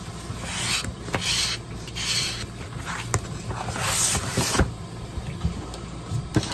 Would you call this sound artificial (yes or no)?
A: no